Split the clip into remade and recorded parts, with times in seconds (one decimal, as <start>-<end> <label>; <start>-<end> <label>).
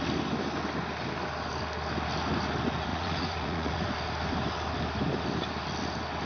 0.0-2.9 recorded; 2.9-3.9 remade; 3.9-6.3 recorded